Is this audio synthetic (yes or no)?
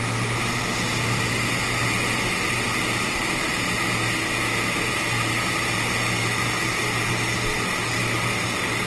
no